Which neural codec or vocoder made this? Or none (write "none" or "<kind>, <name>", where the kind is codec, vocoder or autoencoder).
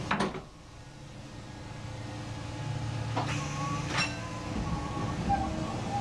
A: none